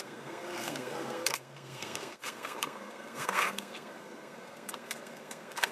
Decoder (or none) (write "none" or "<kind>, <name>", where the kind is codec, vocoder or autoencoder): codec, SNAC